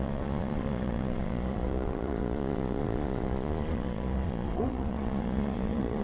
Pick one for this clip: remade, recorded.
remade